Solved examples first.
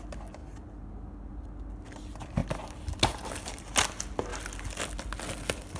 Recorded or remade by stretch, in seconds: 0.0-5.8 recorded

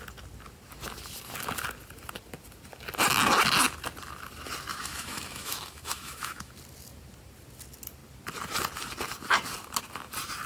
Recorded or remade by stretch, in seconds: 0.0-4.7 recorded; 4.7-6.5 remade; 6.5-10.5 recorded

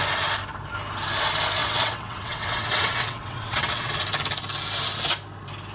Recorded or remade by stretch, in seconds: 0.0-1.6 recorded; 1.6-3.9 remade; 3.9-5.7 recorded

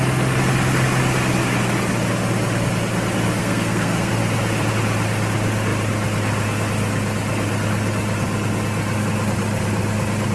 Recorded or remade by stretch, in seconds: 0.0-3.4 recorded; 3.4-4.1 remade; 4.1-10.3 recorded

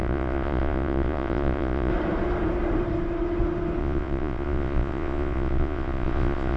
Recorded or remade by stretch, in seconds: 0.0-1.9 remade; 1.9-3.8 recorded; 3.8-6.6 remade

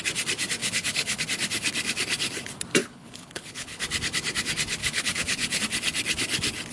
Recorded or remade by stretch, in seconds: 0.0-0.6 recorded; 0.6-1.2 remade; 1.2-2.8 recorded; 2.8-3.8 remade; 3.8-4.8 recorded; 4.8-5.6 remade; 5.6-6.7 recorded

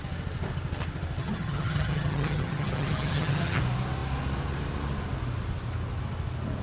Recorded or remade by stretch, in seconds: 0.0-1.2 recorded; 1.2-3.6 remade; 3.6-6.6 recorded